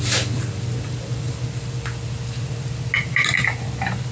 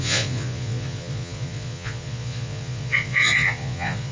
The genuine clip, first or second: first